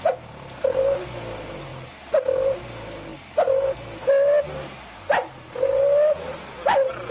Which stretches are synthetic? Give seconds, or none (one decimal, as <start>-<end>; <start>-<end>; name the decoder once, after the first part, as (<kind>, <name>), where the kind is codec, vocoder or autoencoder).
none